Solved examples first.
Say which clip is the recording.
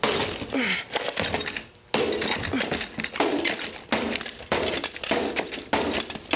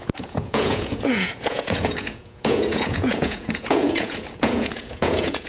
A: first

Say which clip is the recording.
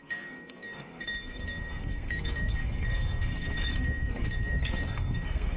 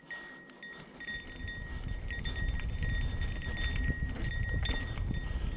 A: second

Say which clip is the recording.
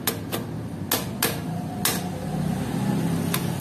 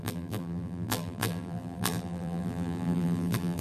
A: first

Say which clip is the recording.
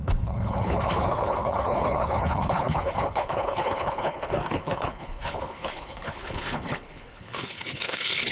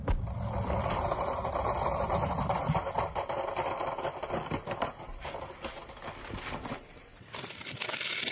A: second